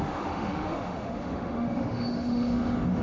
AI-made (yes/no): yes